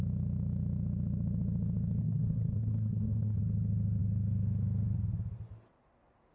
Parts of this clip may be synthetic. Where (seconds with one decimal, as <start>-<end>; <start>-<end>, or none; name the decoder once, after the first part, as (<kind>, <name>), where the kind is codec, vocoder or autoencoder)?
2.0-3.4 (codec, SNAC)